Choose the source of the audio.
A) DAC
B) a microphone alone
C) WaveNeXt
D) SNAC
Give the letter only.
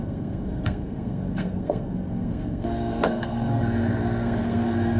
D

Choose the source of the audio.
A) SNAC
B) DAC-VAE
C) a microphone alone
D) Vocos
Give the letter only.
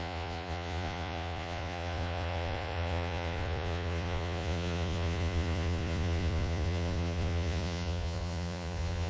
D